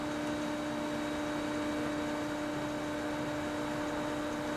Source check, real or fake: real